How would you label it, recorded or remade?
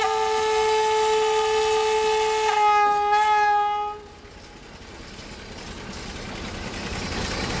recorded